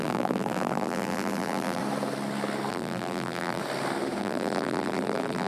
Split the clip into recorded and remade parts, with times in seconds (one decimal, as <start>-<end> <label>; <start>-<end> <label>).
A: 0.0-1.8 remade; 1.8-2.7 recorded; 2.7-3.6 remade; 3.6-4.2 recorded; 4.2-5.5 remade